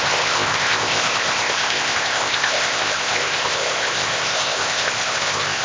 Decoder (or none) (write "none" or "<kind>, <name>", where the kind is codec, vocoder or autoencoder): codec, ZipCodec